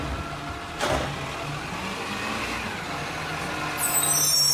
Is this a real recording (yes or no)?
yes